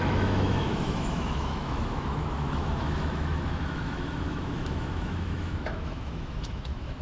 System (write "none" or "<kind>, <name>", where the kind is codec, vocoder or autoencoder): autoencoder, DAC-VAE